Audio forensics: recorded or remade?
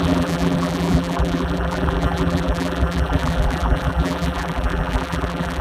remade